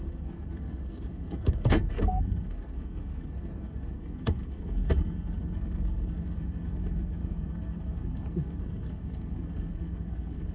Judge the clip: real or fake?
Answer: fake